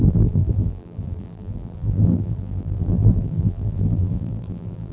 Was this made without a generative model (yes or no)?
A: no